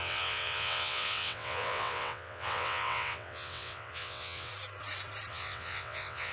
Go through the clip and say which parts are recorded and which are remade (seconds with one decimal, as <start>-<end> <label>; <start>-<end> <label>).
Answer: 0.0-4.5 remade; 4.5-5.3 recorded; 5.3-6.3 remade